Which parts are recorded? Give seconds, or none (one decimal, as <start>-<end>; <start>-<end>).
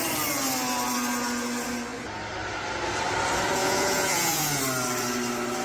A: 0.0-3.6; 4.6-5.6